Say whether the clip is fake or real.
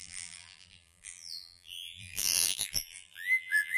fake